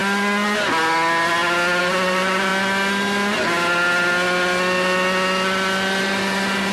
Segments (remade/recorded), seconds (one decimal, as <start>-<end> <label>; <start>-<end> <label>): 0.0-1.8 recorded; 1.8-2.5 remade; 2.5-6.0 recorded; 6.0-6.7 remade